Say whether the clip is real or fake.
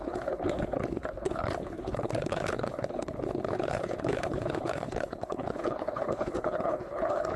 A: fake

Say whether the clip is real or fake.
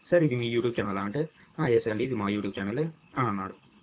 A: fake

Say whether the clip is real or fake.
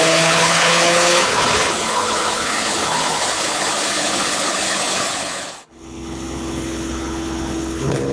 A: fake